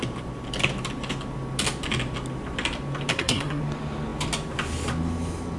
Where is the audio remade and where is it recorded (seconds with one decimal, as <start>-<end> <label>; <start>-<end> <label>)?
0.0-3.1 recorded; 3.1-3.6 remade; 3.6-5.6 recorded